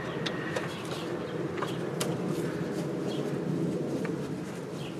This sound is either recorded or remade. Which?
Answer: recorded